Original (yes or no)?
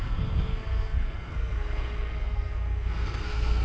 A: no